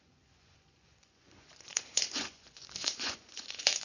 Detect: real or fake fake